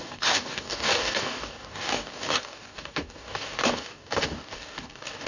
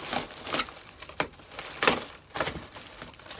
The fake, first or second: first